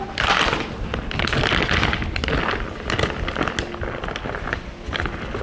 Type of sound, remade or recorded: recorded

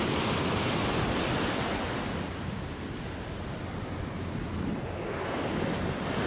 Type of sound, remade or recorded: recorded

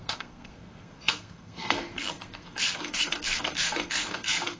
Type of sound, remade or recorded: remade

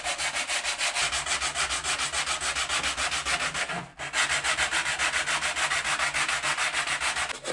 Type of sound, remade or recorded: recorded